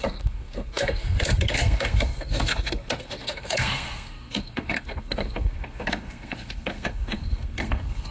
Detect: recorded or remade remade